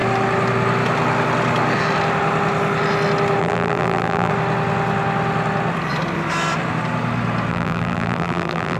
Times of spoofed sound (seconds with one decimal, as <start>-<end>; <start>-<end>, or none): 3.4-4.3; 7.5-8.8